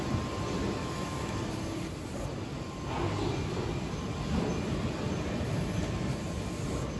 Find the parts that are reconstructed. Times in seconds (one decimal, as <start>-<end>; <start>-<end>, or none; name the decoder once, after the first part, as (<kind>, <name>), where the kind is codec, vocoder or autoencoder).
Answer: 0.8-1.4 (autoencoder, DAC-VAE)